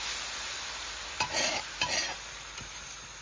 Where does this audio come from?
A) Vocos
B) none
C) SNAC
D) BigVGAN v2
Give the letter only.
B